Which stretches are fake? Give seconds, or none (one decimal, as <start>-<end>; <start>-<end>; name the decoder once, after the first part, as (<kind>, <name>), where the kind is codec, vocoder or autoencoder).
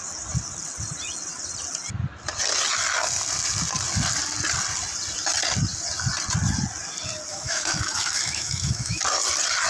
7.3-9.0 (autoencoder, DAC-VAE)